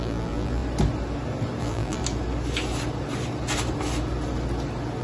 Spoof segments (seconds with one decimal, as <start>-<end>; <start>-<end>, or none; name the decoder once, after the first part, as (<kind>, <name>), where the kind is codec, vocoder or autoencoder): 0.0-0.6 (vocoder, BigVGAN v2); 1.6-2.0